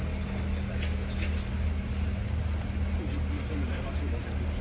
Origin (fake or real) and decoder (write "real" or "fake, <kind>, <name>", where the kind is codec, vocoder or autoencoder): real